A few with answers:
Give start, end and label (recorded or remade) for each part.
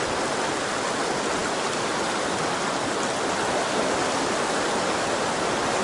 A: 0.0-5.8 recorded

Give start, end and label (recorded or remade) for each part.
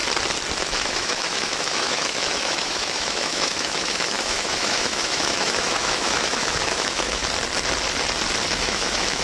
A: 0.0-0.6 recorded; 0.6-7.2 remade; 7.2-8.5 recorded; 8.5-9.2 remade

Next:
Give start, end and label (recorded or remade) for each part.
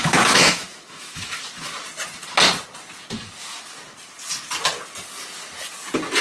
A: 0.0-1.4 remade; 1.4-6.2 recorded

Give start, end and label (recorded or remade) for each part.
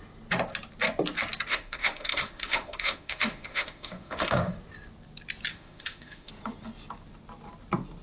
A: 0.0-1.5 recorded; 1.5-4.5 remade; 4.5-5.5 recorded; 5.5-6.3 remade; 6.3-8.0 recorded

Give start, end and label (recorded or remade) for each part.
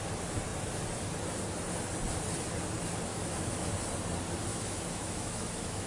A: 0.0-3.1 recorded; 3.1-3.7 remade; 3.7-4.5 recorded; 4.5-5.9 remade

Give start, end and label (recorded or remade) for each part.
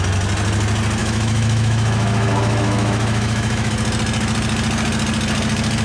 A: 0.0-1.0 recorded; 1.0-3.7 remade; 3.7-5.8 recorded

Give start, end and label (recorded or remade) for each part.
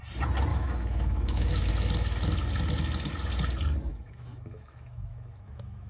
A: 0.0-0.5 recorded; 0.5-1.7 remade; 1.7-3.9 recorded; 3.9-5.9 remade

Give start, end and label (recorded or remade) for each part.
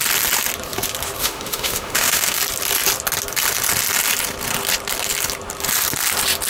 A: 0.0-1.2 recorded; 1.2-2.4 remade; 2.4-6.5 recorded